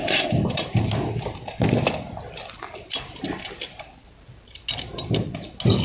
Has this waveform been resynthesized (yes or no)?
no